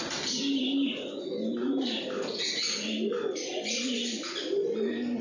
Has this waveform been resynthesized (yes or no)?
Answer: no